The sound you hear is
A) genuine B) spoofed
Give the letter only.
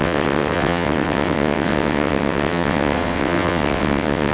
B